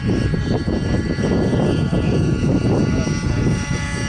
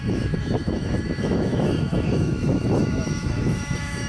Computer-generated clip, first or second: second